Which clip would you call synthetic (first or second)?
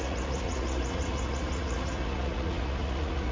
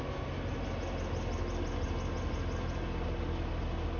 first